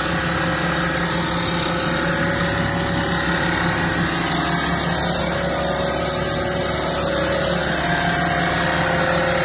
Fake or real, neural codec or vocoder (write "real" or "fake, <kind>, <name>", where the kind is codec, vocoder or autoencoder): real